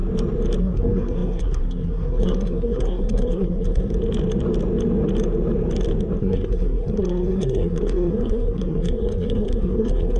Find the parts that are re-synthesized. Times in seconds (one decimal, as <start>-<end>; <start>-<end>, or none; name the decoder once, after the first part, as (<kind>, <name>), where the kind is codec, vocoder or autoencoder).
0.6-3.9 (codec, SNAC); 6.2-10.2